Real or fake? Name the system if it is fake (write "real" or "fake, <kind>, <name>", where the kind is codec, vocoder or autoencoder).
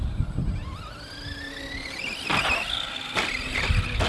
real